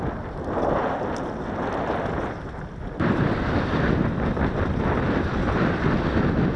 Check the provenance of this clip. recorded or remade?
recorded